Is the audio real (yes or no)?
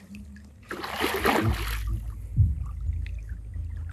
yes